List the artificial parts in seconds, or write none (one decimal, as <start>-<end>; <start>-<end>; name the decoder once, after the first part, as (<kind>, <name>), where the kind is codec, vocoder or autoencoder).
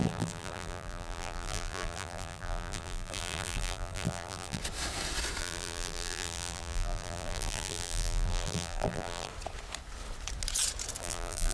0.0-4.6 (vocoder, BigVGAN v2); 5.4-9.3; 11.0-11.5